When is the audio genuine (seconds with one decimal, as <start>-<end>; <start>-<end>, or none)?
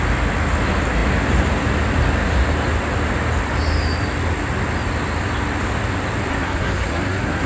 0.0-6.3